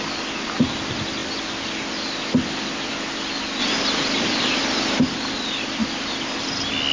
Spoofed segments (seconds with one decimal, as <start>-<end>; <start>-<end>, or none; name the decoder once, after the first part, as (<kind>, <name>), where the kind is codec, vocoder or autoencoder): 3.6-5.0 (vocoder, BigVGAN v2)